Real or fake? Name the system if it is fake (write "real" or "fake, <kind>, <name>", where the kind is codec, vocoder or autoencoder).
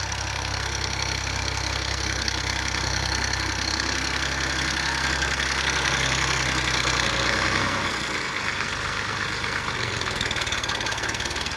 fake, codec, SNAC